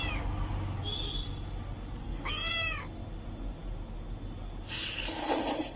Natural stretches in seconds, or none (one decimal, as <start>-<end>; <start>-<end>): 0.0-2.0; 2.5-5.8